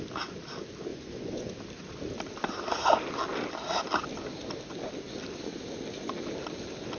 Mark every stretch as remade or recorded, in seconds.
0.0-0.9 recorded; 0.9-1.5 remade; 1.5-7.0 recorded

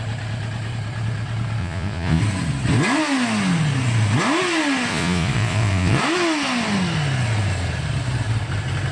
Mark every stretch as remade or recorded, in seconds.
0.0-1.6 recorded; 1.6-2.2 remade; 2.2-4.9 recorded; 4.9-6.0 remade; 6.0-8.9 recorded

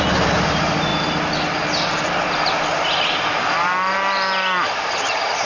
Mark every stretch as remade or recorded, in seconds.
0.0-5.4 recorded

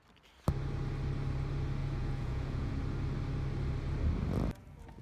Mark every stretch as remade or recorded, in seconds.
0.0-1.8 recorded; 1.8-2.7 remade; 2.7-5.0 recorded

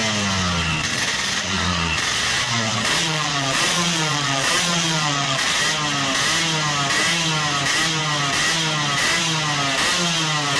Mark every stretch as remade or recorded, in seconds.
0.0-0.9 recorded; 0.9-5.5 remade; 5.5-10.6 recorded